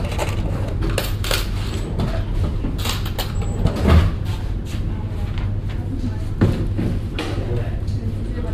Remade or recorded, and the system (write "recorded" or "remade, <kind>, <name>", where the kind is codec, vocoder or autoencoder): recorded